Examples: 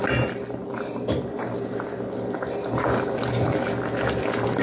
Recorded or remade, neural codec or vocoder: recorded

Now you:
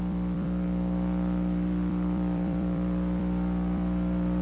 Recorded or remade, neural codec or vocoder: remade, vocoder, BigVGAN v2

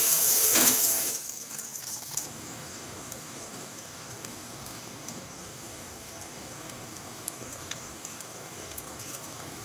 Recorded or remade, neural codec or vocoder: remade, codec, DAC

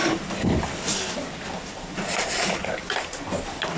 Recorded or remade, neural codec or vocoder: recorded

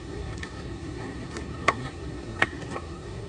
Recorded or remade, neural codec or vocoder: remade, codec, SNAC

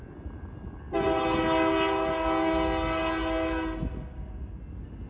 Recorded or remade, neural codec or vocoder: recorded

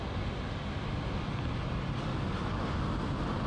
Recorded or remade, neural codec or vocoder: recorded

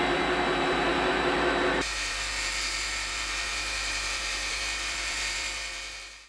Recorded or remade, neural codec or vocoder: remade, vocoder, BigVGAN v2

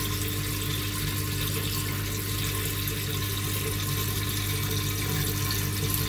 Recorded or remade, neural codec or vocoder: recorded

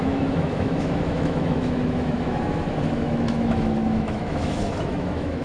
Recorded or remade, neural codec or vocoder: remade, autoencoder, DAC-VAE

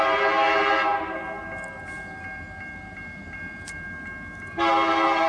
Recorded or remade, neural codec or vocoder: recorded